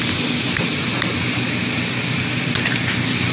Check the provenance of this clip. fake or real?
real